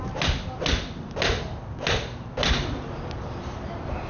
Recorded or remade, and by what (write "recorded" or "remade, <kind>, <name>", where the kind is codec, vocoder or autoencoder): recorded